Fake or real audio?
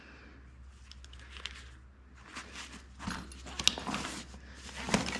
real